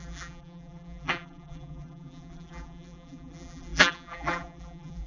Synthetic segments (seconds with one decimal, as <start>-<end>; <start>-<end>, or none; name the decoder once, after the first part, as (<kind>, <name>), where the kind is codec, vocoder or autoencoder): 0.0-5.1 (vocoder, BigVGAN v2)